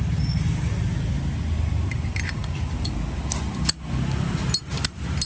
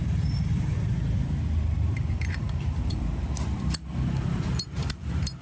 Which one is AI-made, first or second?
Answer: second